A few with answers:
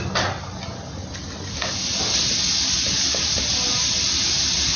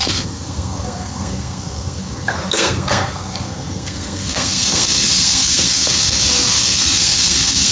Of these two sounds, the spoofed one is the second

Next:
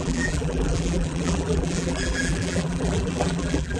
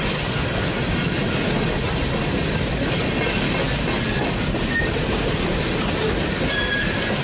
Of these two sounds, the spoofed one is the first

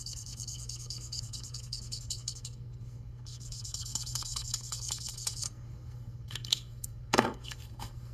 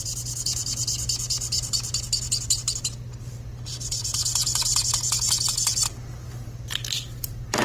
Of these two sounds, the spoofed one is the first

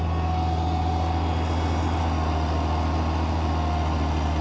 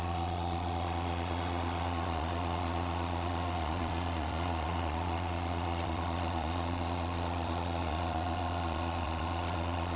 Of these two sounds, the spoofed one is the second